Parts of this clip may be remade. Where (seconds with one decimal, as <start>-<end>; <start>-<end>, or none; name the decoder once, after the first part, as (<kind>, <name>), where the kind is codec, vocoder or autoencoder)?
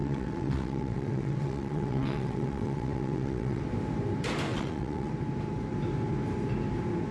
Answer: 0.0-3.6 (vocoder, WaveNeXt); 4.5-5.1